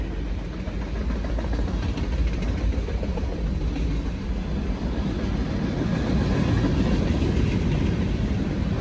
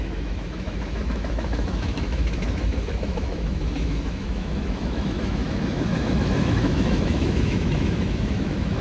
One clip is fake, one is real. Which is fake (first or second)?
second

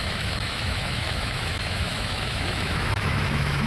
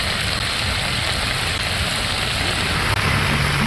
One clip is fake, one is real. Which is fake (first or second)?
first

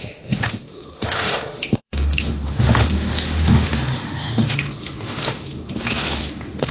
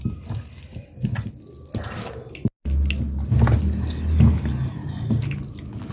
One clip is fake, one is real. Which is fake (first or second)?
first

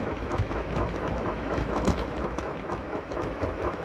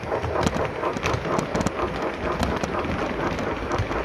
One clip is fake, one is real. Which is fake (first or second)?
first